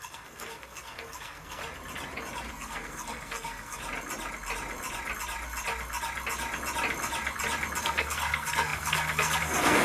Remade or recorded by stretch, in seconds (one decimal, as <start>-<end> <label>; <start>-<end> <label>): 0.0-1.6 remade; 1.6-2.5 recorded; 2.5-3.8 remade; 3.8-7.8 recorded; 7.8-9.8 remade